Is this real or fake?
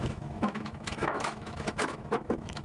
fake